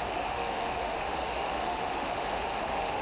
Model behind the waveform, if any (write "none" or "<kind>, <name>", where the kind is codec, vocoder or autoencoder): autoencoder, DAC-VAE